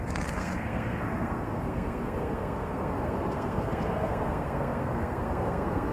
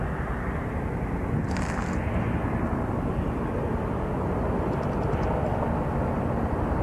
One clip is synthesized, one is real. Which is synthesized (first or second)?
first